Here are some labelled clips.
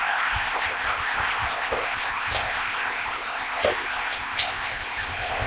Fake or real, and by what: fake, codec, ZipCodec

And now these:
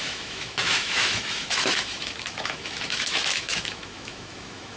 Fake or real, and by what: fake, autoencoder, DAC-VAE